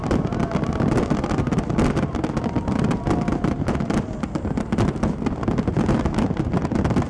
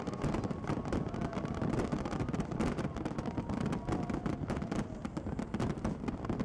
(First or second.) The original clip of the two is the first